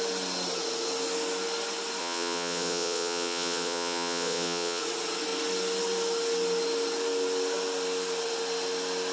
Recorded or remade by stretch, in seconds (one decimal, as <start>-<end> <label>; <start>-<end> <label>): 0.0-2.0 recorded; 2.0-4.8 remade; 4.8-9.1 recorded